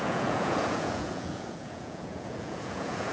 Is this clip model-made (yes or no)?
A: yes